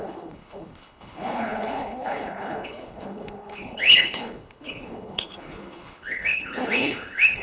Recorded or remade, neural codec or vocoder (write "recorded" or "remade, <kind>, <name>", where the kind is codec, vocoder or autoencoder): remade, codec, HILCodec